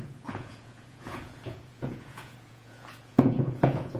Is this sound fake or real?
fake